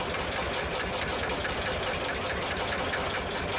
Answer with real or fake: real